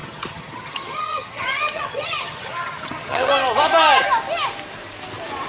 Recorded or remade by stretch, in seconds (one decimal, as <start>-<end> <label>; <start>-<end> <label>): 0.0-3.3 remade; 3.3-5.5 recorded